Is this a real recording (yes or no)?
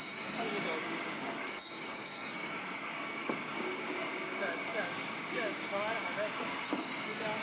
no